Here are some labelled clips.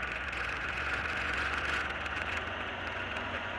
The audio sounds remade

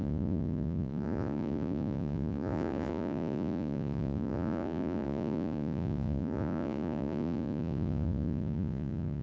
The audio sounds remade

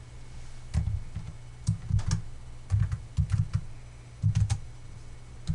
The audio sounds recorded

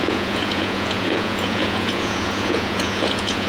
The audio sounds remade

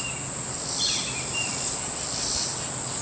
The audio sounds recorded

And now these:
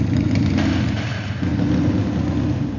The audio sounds recorded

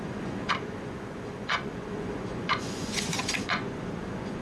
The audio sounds remade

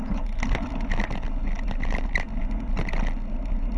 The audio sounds recorded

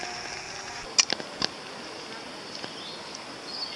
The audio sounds recorded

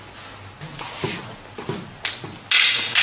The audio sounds recorded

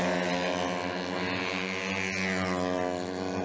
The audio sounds recorded